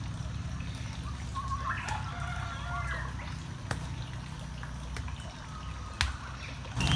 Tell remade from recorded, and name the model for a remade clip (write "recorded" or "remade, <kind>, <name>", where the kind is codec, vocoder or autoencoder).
recorded